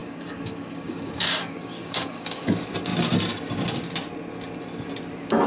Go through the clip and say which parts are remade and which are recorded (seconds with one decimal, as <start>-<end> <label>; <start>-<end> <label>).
0.0-2.5 remade; 2.5-5.5 recorded